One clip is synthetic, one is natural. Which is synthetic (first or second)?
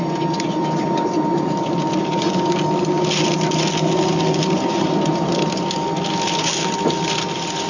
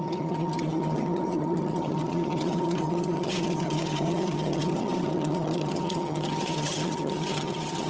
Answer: second